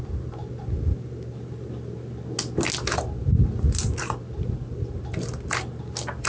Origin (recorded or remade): recorded